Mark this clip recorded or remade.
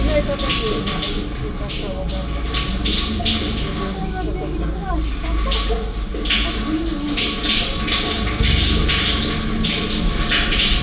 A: recorded